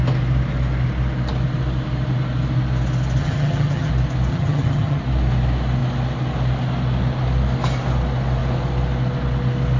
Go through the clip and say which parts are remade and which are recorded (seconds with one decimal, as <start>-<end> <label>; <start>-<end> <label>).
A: 0.0-3.2 recorded; 3.2-3.9 remade; 3.9-4.3 recorded; 4.3-5.0 remade; 5.0-9.8 recorded